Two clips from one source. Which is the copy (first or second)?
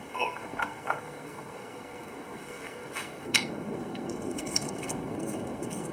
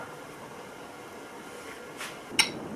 first